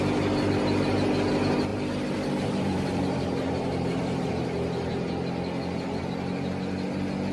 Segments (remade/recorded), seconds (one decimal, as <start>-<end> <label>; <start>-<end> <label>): 0.0-1.7 recorded; 1.7-4.3 remade; 4.3-7.3 recorded